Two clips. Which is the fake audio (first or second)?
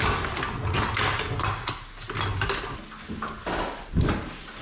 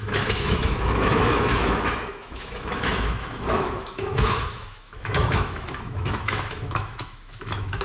second